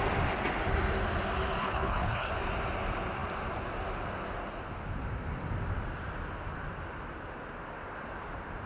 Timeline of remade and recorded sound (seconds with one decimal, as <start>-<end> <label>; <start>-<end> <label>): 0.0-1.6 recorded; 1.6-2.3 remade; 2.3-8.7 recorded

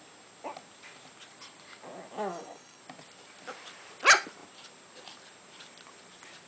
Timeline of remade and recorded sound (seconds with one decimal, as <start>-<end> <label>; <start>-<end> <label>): 0.0-2.3 recorded; 2.3-2.8 remade; 2.8-6.5 recorded

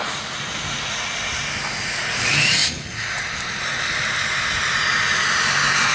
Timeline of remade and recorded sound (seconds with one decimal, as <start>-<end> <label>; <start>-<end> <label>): 0.0-5.9 recorded

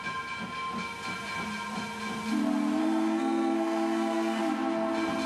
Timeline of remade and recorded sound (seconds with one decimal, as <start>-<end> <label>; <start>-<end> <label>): 0.0-2.8 recorded; 2.8-4.4 remade; 4.4-5.3 recorded

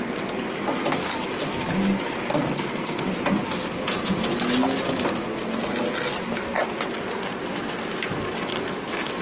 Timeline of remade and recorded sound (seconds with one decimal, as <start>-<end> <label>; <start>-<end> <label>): 0.0-2.3 recorded; 2.3-3.1 remade; 3.1-9.2 recorded